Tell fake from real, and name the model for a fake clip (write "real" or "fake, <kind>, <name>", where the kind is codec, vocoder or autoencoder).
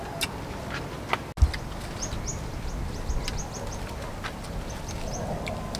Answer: real